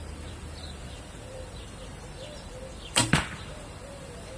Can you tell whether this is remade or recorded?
remade